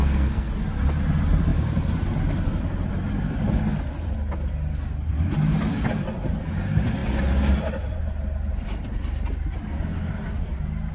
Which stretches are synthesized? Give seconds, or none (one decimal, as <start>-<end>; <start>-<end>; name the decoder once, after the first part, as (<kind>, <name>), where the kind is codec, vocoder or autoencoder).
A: 0.0-0.5 (codec, SNAC)

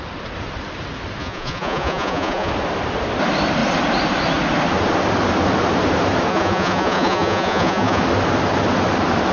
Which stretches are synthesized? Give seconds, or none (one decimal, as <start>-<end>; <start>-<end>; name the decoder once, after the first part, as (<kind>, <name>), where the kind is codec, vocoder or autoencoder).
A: 1.2-2.5 (vocoder, Vocos); 6.3-8.0

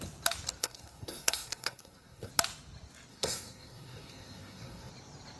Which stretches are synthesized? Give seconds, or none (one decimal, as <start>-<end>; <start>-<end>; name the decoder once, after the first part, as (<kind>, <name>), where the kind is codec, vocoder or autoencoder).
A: 0.6-2.3 (codec, SNAC); 3.1-4.9

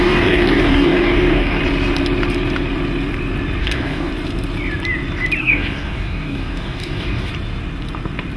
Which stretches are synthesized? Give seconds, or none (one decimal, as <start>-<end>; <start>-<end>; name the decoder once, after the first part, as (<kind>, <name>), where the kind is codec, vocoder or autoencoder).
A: 0.0-1.6 (codec, DAC); 3.6-4.1; 5.4-7.3

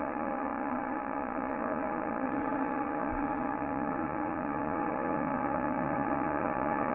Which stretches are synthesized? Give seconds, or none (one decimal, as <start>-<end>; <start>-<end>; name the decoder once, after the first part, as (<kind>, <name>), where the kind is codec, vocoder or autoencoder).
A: 0.0-6.9 (vocoder, Vocos)